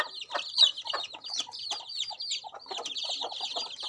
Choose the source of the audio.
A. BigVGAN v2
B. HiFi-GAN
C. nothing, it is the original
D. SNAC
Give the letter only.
C